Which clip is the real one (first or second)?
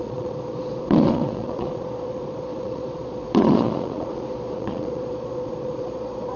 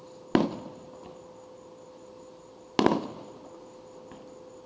second